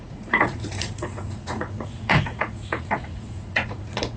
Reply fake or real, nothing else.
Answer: fake